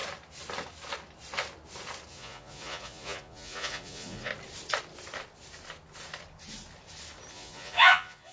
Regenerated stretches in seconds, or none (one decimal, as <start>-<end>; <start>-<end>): 2.1-4.3; 7.3-8.3